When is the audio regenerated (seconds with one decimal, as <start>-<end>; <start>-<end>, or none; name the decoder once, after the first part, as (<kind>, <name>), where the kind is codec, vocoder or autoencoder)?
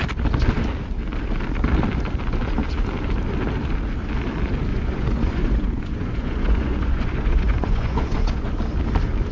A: 4.7-8.5 (vocoder, Vocos)